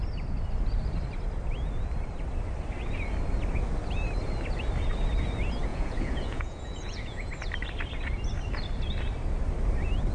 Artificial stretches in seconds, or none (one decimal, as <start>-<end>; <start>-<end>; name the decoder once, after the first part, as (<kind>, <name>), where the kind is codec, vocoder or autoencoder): 5.7-7.3 (vocoder, Vocos)